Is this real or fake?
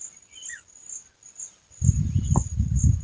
real